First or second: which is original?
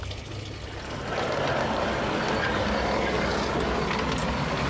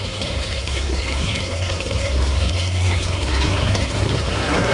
first